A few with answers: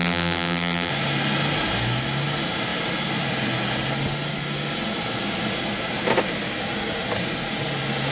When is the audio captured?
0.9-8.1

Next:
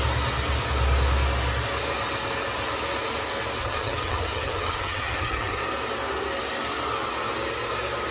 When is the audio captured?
0.0-3.6; 5.6-8.1

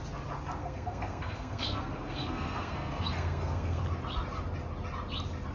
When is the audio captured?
0.0-0.6; 3.8-5.5